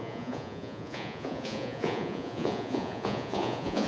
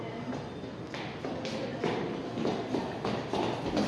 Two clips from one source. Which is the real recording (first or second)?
second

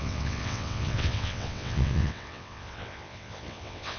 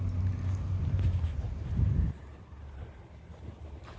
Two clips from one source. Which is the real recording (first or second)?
second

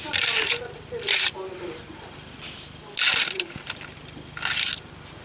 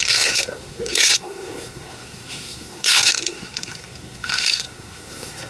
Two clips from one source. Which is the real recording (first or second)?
first